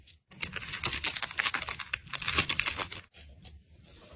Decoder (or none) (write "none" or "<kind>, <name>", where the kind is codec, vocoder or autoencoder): none